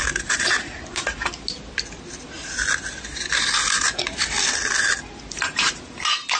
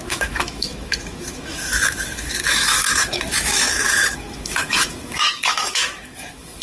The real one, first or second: first